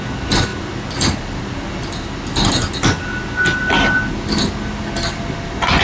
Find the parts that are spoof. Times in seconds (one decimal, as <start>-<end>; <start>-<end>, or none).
none